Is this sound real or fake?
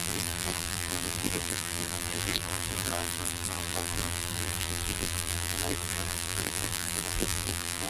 fake